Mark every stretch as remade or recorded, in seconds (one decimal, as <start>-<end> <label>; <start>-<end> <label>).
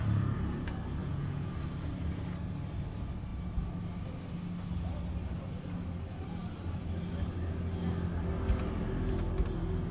0.0-1.0 recorded; 1.0-1.5 remade; 1.5-9.9 recorded